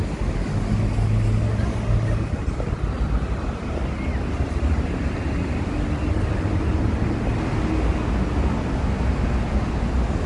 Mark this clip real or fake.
real